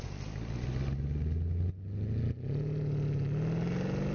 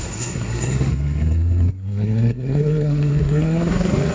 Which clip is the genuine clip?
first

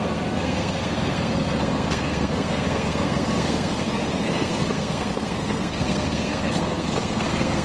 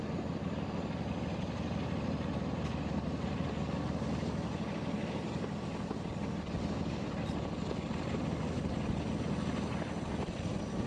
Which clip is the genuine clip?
second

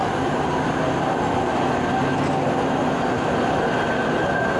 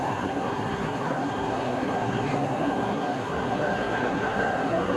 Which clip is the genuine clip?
first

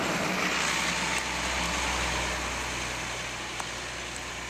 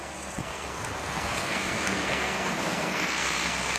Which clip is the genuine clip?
first